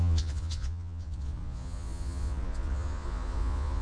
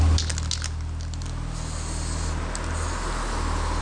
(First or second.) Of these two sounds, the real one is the second